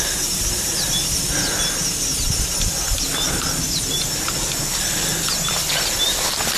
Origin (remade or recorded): recorded